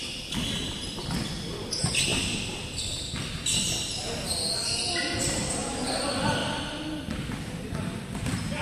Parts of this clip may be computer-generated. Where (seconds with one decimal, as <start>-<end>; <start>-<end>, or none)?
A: 0.6-2.1; 5.2-8.6